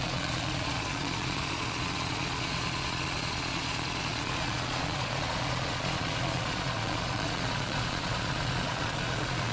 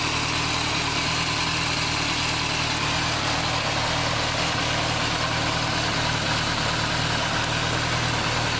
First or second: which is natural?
second